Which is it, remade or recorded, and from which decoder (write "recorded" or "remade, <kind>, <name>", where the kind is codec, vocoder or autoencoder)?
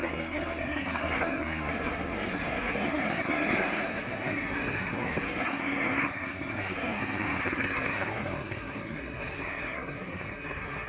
remade, codec, SNAC